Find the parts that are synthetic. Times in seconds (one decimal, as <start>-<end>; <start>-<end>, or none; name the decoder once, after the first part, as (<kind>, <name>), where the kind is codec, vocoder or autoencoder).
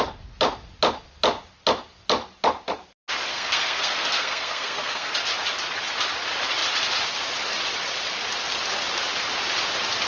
3.3-5.1 (codec, SNAC)